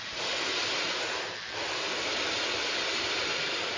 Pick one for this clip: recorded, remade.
recorded